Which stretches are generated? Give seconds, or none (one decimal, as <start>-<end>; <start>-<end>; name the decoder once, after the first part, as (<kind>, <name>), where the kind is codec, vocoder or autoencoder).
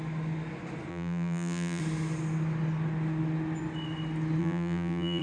0.9-1.8 (vocoder, BigVGAN v2); 4.4-5.2